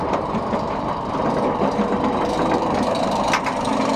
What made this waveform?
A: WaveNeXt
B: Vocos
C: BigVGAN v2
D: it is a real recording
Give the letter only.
C